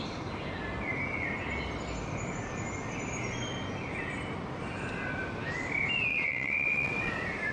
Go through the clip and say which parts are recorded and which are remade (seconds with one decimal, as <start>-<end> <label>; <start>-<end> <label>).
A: 0.0-6.1 recorded; 6.1-7.1 remade; 7.1-7.5 recorded